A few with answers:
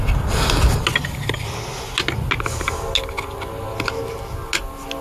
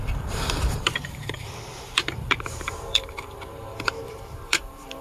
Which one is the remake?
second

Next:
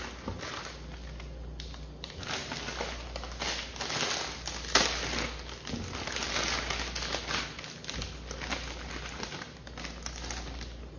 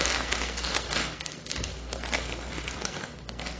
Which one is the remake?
second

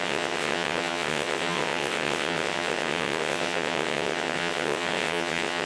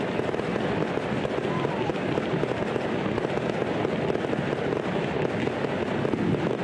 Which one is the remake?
first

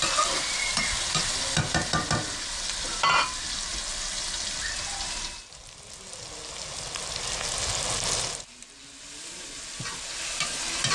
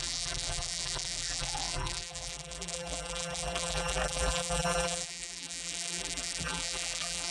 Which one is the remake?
second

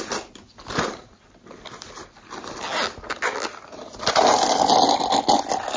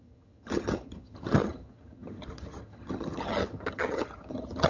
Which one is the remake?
second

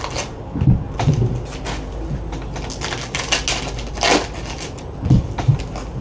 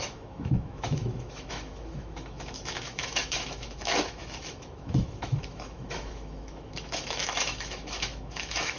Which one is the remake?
second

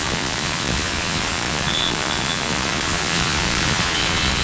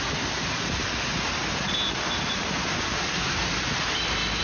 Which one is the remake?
first